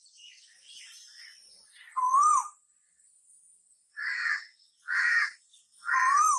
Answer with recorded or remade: remade